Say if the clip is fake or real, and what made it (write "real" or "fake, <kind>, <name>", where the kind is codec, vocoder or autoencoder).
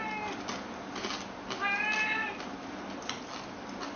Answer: real